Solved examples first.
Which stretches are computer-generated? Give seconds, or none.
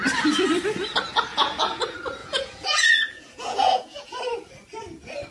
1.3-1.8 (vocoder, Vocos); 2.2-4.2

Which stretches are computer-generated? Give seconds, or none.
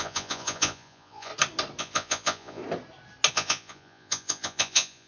0.0-1.3 (vocoder, Vocos); 1.8-2.6; 3.3-5.1